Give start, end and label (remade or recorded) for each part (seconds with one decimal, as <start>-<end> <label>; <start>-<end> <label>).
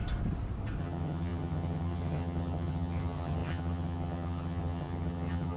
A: 0.0-0.8 recorded; 0.8-5.6 remade